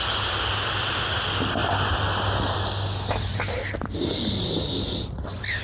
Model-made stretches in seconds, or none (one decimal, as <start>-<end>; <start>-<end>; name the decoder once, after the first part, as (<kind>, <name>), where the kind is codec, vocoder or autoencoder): none